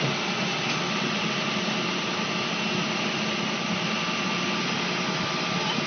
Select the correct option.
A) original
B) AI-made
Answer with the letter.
A